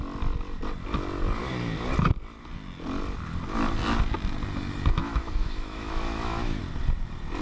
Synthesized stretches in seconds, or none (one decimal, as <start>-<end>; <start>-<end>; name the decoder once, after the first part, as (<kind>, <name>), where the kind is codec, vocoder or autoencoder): 5.0-6.6 (autoencoder, DAC-VAE)